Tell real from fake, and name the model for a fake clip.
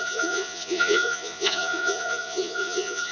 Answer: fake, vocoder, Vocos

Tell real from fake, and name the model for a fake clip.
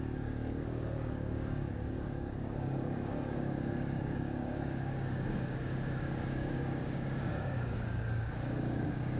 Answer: fake, codec, DAC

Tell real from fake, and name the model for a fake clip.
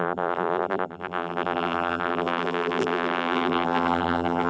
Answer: fake, vocoder, BigVGAN v2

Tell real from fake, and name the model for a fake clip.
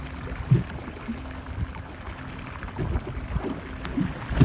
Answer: real